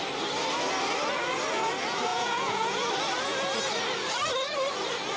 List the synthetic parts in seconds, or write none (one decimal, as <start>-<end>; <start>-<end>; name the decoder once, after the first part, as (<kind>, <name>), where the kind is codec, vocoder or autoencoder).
2.1-2.9 (vocoder, Vocos)